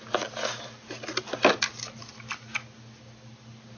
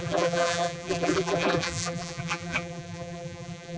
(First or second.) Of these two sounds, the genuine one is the first